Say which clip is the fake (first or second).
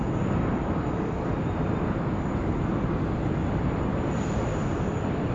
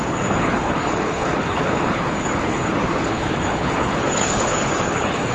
second